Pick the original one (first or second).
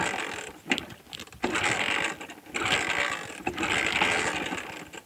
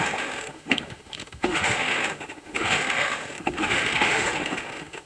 first